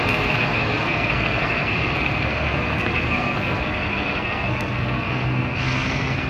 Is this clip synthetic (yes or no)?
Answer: yes